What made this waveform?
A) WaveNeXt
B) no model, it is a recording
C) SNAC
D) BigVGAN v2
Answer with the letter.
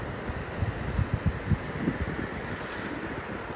B